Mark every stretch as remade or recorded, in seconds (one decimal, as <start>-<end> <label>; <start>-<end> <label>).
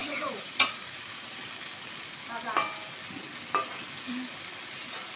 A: 0.0-1.3 remade; 1.3-5.2 recorded